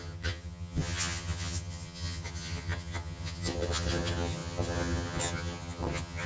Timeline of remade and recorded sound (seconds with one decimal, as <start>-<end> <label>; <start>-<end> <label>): 0.0-6.3 remade